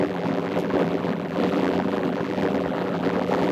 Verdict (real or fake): fake